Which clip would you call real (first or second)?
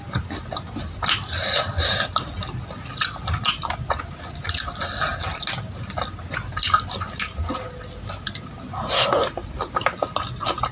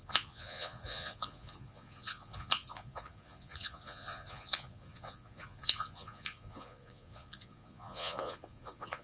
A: first